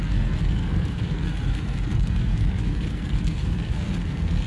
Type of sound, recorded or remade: remade